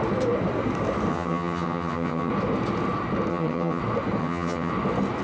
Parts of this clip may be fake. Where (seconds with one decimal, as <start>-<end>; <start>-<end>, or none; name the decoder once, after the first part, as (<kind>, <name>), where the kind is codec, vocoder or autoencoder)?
1.1-2.3 (vocoder, HiFi-GAN); 3.3-3.8; 4.2-4.7